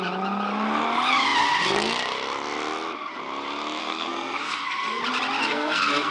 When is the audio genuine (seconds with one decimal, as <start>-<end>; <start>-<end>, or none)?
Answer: 0.0-3.8; 5.0-5.4